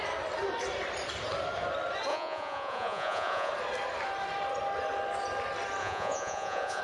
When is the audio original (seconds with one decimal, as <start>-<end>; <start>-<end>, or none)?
0.0-2.1; 3.5-5.8